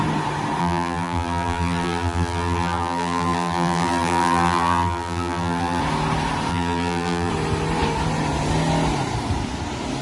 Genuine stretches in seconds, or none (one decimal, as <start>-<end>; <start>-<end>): 0.0-0.6; 5.8-6.5; 7.3-10.0